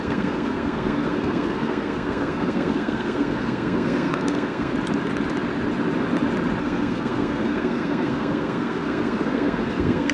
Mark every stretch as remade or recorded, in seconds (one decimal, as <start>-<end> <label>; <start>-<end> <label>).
0.0-4.7 remade; 4.7-6.6 recorded; 6.6-10.1 remade